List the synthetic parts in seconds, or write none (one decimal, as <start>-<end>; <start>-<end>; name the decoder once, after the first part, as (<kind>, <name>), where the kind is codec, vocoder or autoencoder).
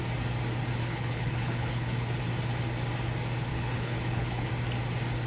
0.8-2.2 (codec, HILCodec); 3.5-4.5